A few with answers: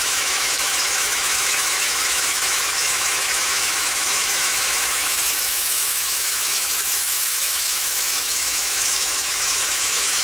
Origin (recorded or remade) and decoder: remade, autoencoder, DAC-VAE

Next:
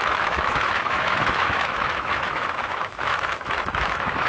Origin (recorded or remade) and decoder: remade, autoencoder, DAC-VAE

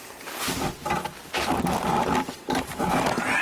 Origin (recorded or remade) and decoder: recorded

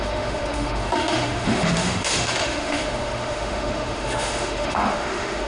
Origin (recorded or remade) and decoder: remade, autoencoder, DAC-VAE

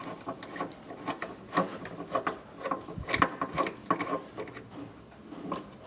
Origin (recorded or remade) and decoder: recorded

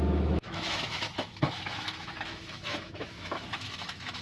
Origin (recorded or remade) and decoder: remade, autoencoder, DAC-VAE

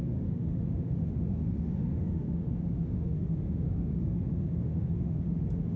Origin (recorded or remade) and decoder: remade, autoencoder, DAC-VAE